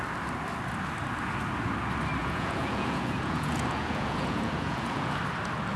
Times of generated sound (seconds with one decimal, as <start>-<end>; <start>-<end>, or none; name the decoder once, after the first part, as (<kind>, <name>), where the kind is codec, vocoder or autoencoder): 2.2-5.2 (vocoder, Vocos)